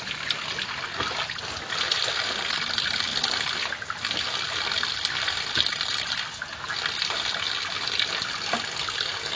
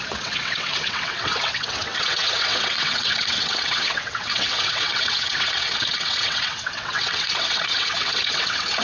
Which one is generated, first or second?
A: second